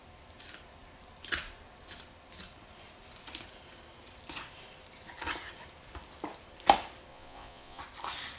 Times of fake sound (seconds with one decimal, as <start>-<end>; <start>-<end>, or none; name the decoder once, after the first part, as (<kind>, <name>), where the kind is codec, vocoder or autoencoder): 7.1-7.8 (vocoder, Vocos)